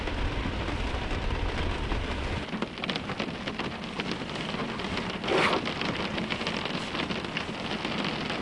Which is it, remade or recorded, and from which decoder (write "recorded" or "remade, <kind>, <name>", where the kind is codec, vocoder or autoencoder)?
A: recorded